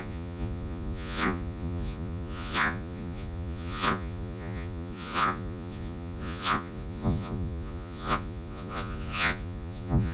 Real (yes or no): no